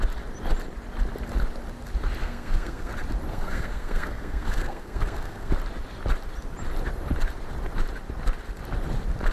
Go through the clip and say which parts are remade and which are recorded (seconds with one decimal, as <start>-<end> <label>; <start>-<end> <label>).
0.0-2.2 recorded; 2.2-2.9 remade; 2.9-3.3 recorded; 3.3-5.5 remade; 5.5-9.3 recorded